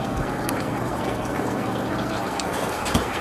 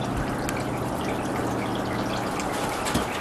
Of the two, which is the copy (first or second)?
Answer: first